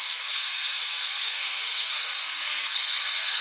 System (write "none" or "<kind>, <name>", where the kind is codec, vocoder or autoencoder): codec, SNAC